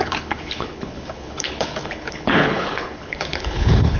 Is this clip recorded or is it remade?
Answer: remade